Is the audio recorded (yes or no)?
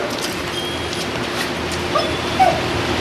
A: yes